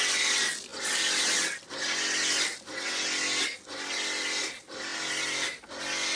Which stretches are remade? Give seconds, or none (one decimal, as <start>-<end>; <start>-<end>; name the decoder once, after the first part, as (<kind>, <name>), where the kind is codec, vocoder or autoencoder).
none